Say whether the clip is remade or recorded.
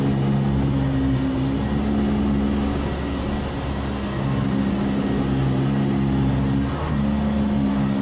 recorded